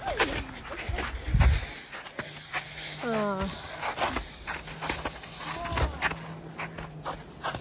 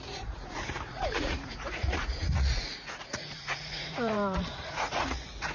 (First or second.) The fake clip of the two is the second